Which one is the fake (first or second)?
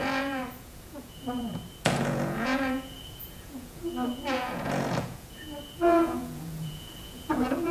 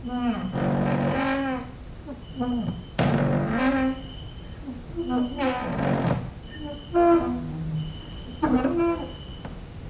first